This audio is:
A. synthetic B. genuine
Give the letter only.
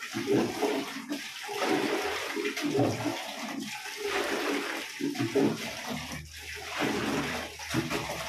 A